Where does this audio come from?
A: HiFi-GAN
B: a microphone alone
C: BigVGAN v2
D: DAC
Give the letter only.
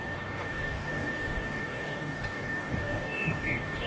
D